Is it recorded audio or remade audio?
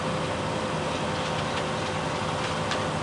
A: recorded